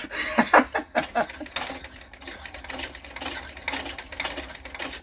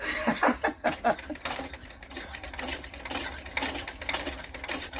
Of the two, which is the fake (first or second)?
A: second